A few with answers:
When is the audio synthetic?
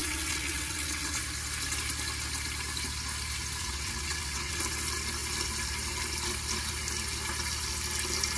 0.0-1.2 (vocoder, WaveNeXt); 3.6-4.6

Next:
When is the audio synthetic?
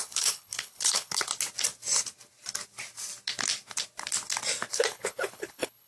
0.0-1.3 (codec, HILCodec); 4.7-5.9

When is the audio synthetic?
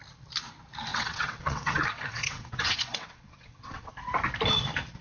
0.9-3.9 (vocoder, WaveNeXt)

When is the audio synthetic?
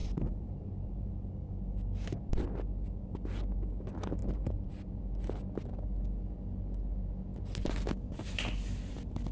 0.0-1.3 (vocoder, BigVGAN v2); 4.2-5.0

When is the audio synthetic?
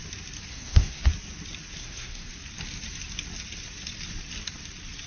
0.5-1.0 (codec, SNAC); 1.8-2.3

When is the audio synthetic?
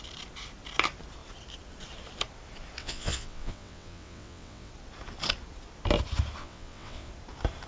2.8-4.7 (vocoder, WaveNeXt); 6.4-7.1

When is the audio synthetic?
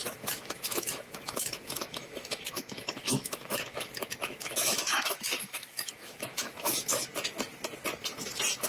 0.0-7.1 (autoencoder, DAC-VAE)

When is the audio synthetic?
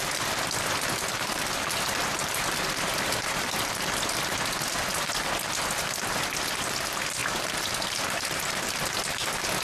none